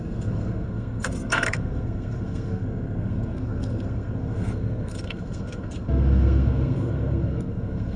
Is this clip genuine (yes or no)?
no